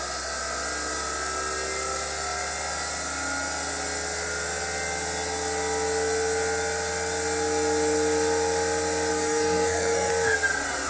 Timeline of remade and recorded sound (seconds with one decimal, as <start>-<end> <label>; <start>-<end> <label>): 0.0-9.1 recorded; 9.1-10.1 remade; 10.1-10.9 recorded